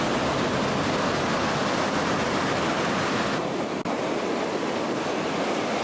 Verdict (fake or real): real